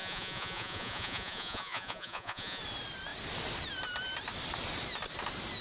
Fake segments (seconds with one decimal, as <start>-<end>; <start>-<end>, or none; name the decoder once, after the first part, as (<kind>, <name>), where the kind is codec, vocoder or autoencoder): 0.0-2.6 (vocoder, Vocos)